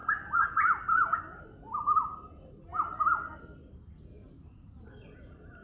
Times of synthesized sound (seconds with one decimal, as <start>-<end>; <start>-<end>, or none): none